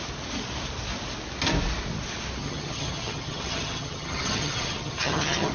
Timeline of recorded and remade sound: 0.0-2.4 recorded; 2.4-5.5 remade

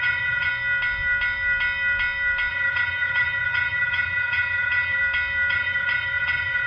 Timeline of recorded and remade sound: 0.0-0.5 remade; 0.5-2.5 recorded; 2.5-5.0 remade; 5.0-5.5 recorded; 5.5-6.7 remade